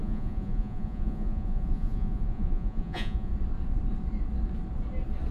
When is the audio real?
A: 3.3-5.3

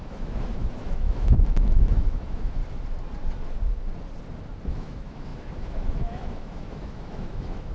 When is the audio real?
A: 2.6-4.7

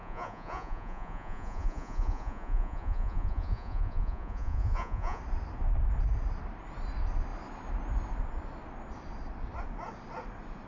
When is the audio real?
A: 5.2-10.7

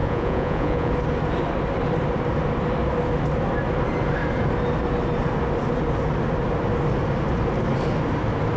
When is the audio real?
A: 0.9-8.6

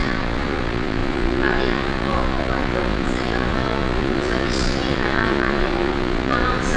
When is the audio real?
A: none